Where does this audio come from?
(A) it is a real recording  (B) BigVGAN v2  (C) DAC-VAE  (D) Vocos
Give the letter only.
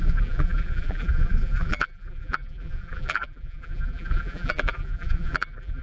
B